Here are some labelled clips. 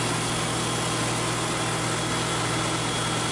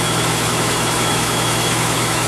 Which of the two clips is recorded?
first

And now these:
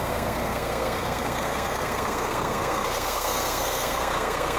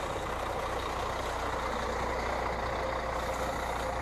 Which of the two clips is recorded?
second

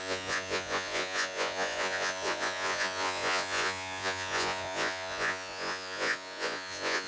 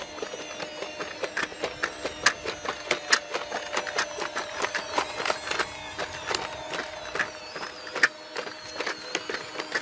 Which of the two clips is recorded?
second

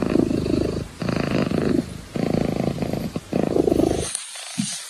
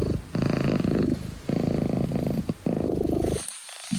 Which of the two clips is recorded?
second